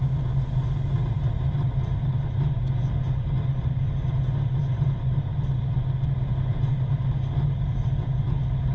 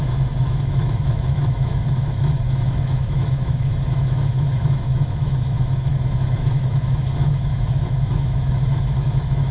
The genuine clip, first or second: first